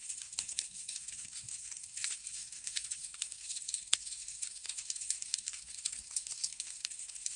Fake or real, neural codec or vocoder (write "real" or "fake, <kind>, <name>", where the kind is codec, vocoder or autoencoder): fake, codec, SNAC